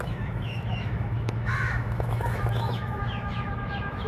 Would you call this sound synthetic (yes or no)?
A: yes